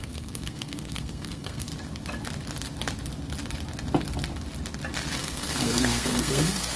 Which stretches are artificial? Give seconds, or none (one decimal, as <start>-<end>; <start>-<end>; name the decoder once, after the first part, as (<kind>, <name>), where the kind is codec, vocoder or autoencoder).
0.0-1.7 (codec, SNAC); 5.2-6.8